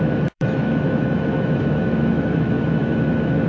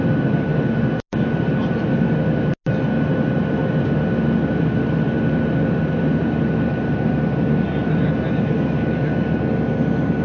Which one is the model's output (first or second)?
first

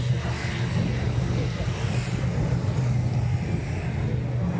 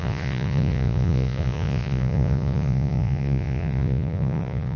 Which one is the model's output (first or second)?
second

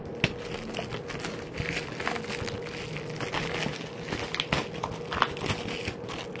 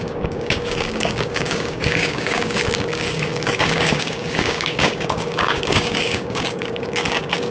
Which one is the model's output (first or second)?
second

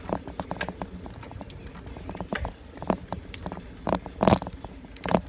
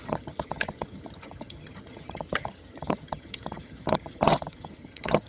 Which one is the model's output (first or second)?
second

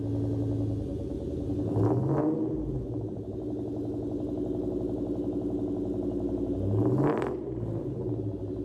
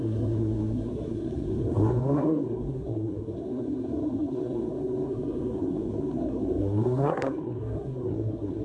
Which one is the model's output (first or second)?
second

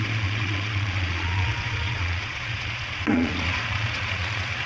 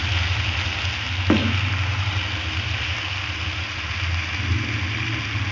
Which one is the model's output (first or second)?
first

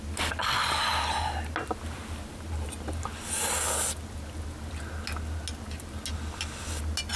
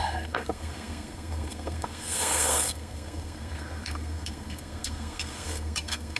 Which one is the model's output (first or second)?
second